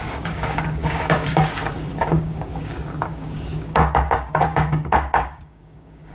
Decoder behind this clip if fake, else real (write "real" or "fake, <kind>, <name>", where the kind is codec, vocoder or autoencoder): fake, codec, DAC